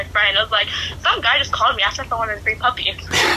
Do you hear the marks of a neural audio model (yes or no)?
no